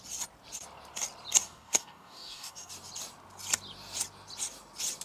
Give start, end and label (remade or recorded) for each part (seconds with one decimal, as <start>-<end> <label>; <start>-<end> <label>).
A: 0.0-1.4 recorded; 1.4-2.7 remade; 2.7-5.0 recorded